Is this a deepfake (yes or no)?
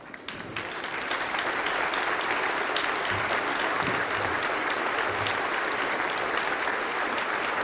no